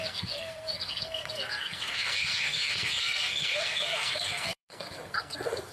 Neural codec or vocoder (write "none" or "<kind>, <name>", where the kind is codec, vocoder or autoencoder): codec, SNAC